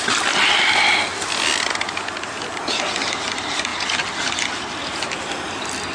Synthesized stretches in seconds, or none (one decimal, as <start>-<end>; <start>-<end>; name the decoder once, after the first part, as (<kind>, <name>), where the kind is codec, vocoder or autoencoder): none